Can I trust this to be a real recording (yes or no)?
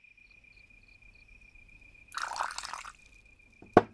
yes